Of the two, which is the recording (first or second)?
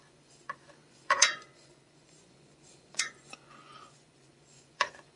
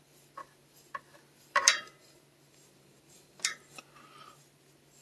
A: second